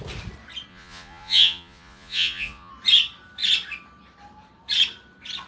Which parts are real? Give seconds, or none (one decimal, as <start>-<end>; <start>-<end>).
0.0-0.7; 2.7-5.5